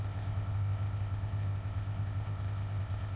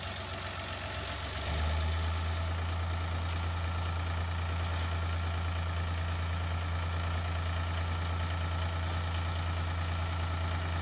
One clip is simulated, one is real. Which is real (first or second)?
second